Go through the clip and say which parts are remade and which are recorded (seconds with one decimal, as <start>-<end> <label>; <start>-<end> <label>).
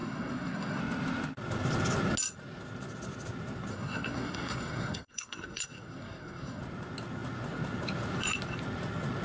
0.0-0.8 remade; 0.8-3.7 recorded; 3.7-6.6 remade; 6.6-9.2 recorded